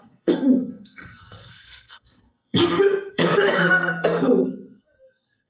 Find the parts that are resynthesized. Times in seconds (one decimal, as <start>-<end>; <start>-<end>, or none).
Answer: 0.0-5.5